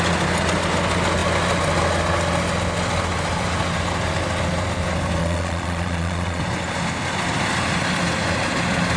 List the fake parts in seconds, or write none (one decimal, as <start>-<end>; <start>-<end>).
5.2-6.4